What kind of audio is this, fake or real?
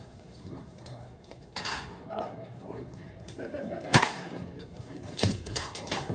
fake